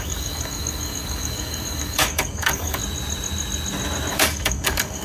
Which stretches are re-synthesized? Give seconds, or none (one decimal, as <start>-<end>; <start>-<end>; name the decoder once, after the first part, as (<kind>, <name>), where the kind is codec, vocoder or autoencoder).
0.0-2.8 (codec, DAC); 4.1-5.0